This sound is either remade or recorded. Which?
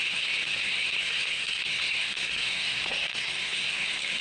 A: remade